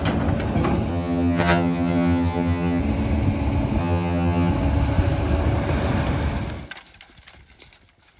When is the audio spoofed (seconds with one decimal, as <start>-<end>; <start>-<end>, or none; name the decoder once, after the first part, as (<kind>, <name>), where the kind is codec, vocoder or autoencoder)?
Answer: 0.9-2.8 (vocoder, HiFi-GAN); 3.8-4.5